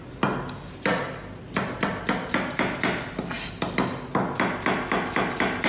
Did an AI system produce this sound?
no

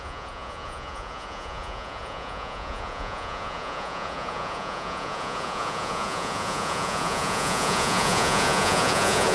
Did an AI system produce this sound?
yes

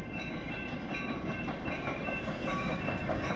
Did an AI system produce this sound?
yes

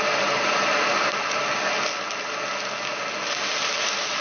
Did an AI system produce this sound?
no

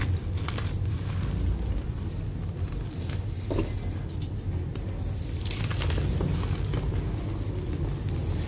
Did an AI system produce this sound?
no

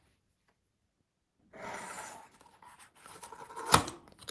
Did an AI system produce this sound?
no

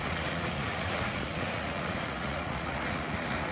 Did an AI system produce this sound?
yes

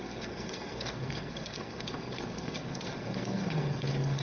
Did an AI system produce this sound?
yes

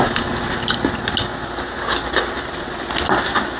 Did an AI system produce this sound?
no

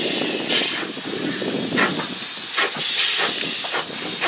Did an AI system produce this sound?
no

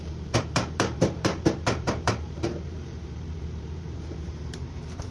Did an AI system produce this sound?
yes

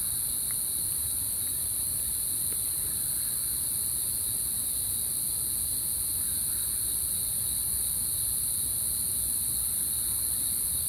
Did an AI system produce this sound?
no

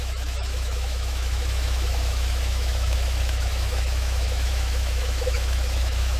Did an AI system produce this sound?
yes